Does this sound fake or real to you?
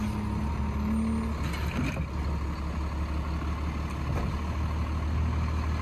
real